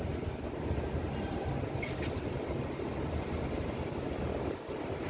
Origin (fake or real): real